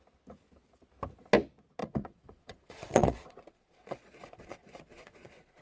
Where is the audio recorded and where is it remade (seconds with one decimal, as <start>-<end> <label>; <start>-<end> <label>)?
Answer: 0.0-1.8 recorded; 1.8-5.6 remade